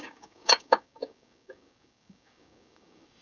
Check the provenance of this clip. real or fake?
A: fake